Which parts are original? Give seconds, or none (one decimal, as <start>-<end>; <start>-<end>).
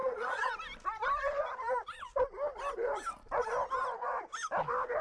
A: 0.5-5.0